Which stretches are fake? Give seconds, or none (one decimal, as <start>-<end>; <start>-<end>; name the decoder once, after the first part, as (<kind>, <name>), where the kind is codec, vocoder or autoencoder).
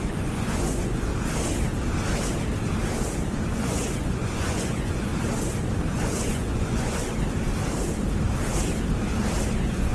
0.0-1.1 (vocoder, Vocos); 3.5-5.1; 5.9-7.0; 9.5-9.9